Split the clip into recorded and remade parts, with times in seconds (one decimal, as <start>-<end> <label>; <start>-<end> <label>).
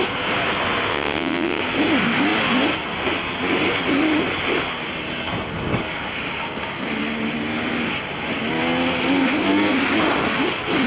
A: 0.0-0.9 recorded; 0.9-1.6 remade; 1.6-10.9 recorded